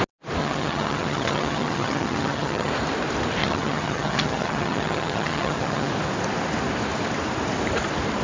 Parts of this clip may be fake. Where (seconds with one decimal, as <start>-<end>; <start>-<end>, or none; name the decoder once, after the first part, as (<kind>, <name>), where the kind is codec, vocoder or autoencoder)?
0.4-2.7 (vocoder, HiFi-GAN); 3.4-5.9